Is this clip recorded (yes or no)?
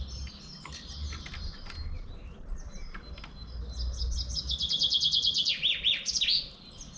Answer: yes